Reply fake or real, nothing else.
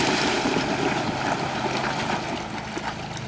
real